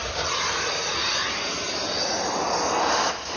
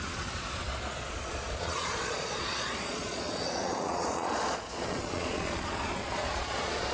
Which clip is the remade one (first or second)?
second